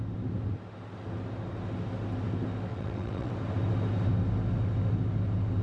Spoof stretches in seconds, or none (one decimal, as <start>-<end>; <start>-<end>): 2.7-3.3